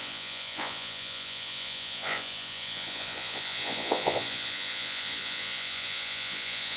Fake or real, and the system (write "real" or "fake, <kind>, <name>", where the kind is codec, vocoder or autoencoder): fake, vocoder, Vocos